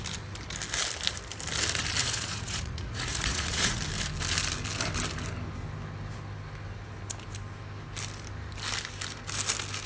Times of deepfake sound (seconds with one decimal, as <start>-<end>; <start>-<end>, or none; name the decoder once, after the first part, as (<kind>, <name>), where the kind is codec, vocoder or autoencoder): 2.0-3.8 (vocoder, Vocos)